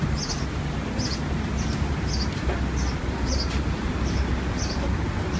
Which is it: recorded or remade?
recorded